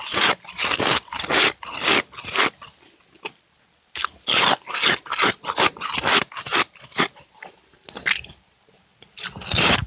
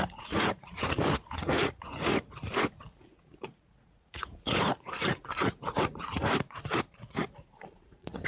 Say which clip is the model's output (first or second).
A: second